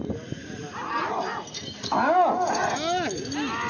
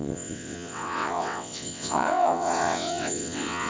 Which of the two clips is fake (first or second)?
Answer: second